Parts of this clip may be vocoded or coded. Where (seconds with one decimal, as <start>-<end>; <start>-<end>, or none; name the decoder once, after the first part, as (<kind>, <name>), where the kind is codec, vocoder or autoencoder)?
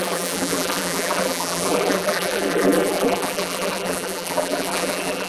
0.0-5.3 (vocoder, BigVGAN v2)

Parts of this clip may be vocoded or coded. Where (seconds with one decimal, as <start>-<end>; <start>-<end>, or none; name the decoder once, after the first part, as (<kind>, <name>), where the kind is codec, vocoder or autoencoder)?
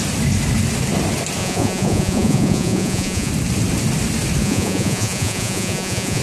1.4-3.3 (vocoder, Vocos); 4.4-6.2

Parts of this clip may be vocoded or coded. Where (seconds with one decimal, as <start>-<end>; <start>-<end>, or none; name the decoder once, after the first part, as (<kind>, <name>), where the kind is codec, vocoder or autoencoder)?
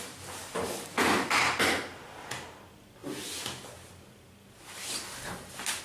0.4-1.0 (codec, DAC)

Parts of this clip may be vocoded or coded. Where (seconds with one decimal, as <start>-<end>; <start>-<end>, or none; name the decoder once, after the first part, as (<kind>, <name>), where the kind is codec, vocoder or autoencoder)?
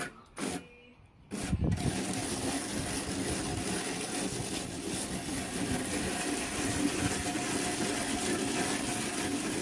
0.9-2.2 (vocoder, BigVGAN v2)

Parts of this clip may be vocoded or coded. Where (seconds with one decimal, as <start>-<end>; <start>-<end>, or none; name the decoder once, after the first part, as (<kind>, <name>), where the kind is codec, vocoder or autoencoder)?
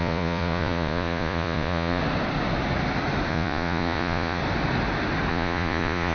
0.0-2.0 (vocoder, Vocos); 3.3-4.4; 5.3-6.1